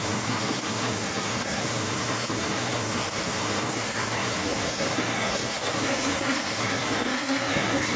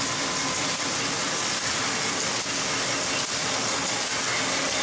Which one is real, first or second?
second